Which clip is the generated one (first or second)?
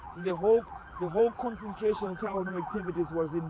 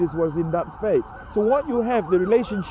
first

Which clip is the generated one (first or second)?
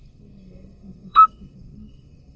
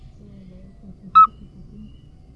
first